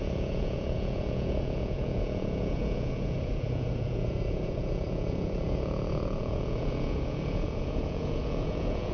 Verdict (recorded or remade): remade